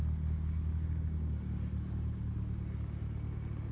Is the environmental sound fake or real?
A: real